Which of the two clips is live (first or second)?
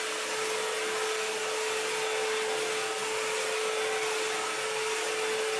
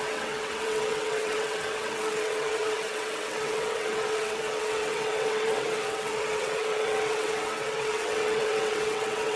first